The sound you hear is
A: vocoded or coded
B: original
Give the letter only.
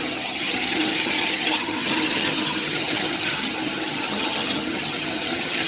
A